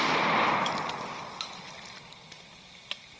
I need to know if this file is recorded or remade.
recorded